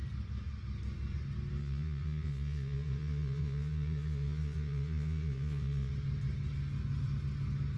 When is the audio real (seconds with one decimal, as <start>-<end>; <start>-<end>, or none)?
0.0-1.6; 5.9-7.8